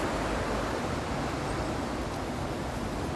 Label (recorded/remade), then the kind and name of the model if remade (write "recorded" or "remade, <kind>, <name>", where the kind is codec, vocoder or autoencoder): recorded